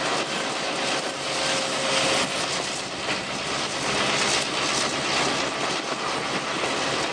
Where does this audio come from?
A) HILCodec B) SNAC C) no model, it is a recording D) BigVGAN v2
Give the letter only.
C